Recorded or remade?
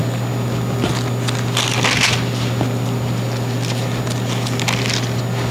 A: recorded